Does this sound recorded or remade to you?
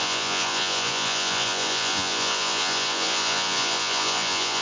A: remade